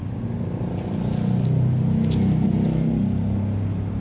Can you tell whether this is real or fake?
real